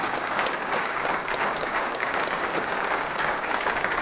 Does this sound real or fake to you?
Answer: fake